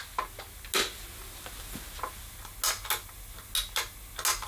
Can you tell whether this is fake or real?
real